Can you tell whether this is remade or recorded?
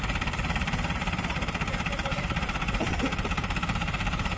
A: remade